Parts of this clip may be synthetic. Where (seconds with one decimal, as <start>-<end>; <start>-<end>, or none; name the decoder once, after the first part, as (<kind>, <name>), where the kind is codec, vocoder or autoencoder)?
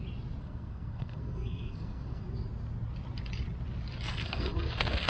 0.4-2.2 (codec, SNAC); 4.1-5.1